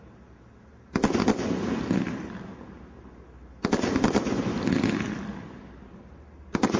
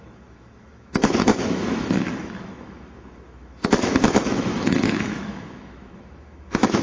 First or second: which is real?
first